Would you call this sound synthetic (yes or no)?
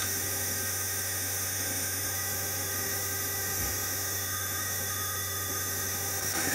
yes